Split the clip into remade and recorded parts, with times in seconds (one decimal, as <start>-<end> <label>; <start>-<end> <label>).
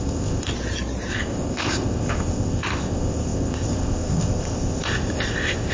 0.0-0.5 remade; 0.5-1.1 recorded; 1.1-5.7 remade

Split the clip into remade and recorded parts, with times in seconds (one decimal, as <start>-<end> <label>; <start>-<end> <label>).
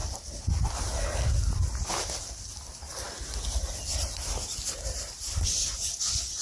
0.0-5.7 recorded; 5.7-6.4 remade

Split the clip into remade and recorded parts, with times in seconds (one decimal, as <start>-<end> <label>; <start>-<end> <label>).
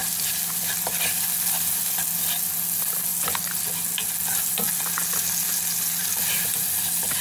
0.0-0.8 remade; 0.8-7.2 recorded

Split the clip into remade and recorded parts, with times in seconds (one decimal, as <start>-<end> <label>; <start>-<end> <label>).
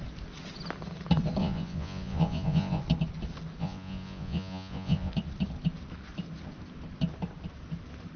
0.0-1.4 recorded; 1.4-2.8 remade; 2.8-3.6 recorded; 3.6-5.1 remade; 5.1-8.2 recorded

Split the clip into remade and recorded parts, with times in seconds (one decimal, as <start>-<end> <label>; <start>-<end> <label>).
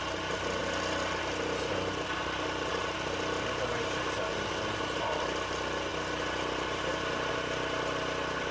0.0-8.5 recorded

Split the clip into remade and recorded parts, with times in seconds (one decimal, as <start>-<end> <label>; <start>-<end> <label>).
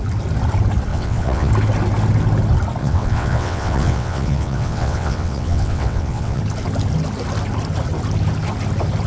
0.0-0.9 recorded; 0.9-1.5 remade; 1.5-2.8 recorded; 2.8-6.4 remade; 6.4-9.1 recorded